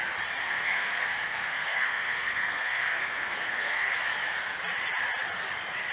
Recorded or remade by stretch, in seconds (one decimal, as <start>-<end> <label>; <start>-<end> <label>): 0.0-0.4 recorded; 0.4-3.9 remade; 3.9-5.9 recorded